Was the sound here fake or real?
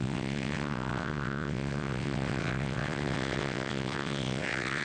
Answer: fake